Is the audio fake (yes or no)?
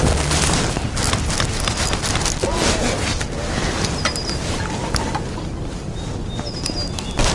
no